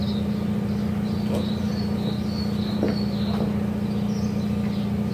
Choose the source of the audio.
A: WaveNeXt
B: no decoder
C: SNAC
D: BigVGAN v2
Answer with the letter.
B